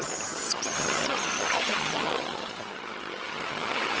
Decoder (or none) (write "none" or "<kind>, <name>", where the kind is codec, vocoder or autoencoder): vocoder, HiFi-GAN